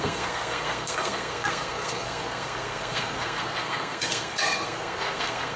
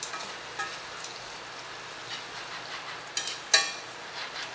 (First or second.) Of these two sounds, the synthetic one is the first